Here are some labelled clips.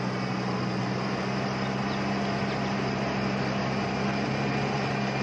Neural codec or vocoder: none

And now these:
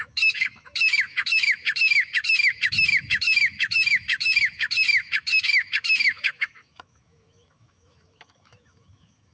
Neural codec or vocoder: autoencoder, DAC-VAE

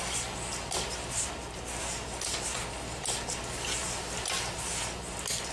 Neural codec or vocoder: none